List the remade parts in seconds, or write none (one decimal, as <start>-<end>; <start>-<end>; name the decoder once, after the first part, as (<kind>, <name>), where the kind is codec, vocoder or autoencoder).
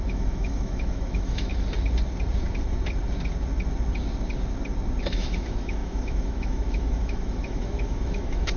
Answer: 0.0-1.5 (autoencoder, DAC-VAE); 5.0-8.6